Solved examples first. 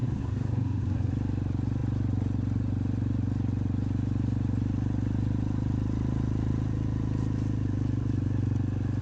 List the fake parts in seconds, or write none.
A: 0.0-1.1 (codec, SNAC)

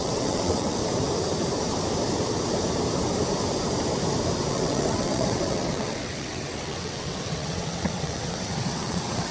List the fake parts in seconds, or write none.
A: 0.0-0.8 (vocoder, WaveNeXt); 4.5-9.3

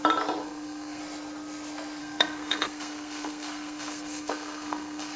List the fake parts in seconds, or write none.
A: 0.4-1.0 (codec, SNAC); 2.0-5.2

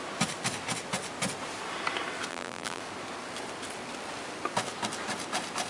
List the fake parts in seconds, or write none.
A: 2.3-2.8 (vocoder, BigVGAN v2)

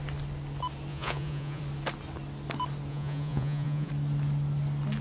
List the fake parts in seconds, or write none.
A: 0.9-1.6 (vocoder, Vocos); 2.9-3.9

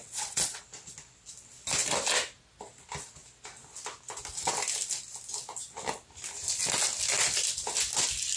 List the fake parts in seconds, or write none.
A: 0.0-0.6 (vocoder, WaveNeXt)